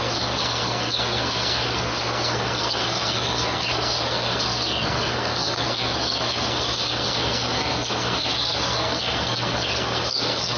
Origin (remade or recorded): remade